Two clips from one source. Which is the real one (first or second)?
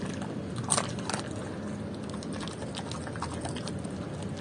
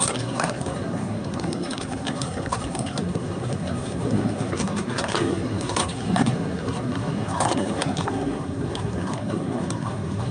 first